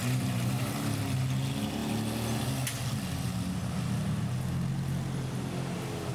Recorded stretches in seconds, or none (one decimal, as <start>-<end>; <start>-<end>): 1.0-6.1